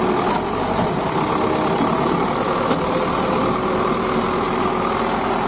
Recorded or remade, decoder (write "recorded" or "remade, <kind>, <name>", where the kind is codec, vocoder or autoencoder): recorded